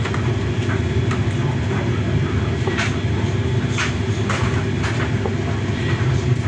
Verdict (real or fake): real